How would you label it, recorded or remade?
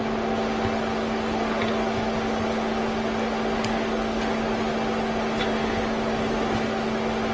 recorded